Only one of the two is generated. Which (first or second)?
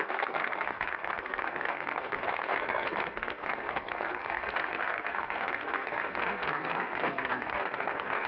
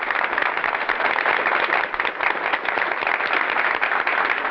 first